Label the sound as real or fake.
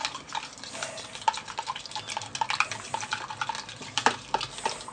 real